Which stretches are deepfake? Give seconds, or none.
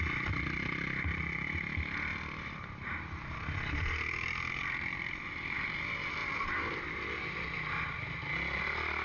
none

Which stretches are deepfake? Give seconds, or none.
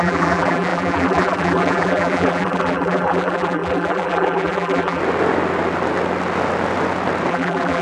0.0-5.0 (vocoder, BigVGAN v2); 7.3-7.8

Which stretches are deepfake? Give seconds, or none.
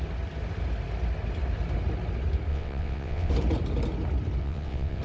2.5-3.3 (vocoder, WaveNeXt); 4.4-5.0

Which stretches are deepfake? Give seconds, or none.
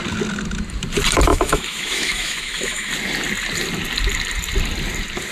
1.3-2.9 (autoencoder, DAC-VAE)